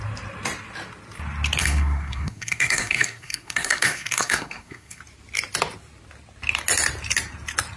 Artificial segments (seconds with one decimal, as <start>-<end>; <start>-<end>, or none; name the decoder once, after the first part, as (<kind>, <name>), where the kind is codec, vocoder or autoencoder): 1.6-5.0 (codec, SNAC)